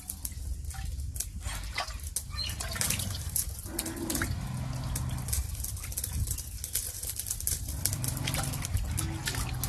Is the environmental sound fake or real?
real